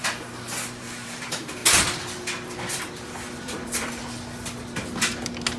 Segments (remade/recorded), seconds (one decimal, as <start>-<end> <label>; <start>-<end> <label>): 0.0-1.6 remade; 1.6-2.7 recorded; 2.7-4.0 remade; 4.0-5.6 recorded